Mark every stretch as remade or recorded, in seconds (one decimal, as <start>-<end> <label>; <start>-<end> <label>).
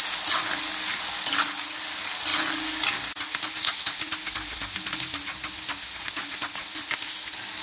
0.0-7.6 recorded